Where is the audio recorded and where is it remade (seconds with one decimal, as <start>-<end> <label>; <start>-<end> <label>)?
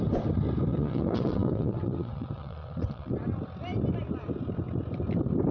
0.0-0.7 recorded; 0.7-3.1 remade; 3.1-5.5 recorded